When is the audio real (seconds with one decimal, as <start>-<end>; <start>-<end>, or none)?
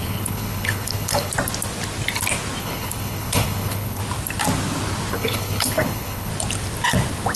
1.3-2.6; 4.0-5.1; 6.3-7.4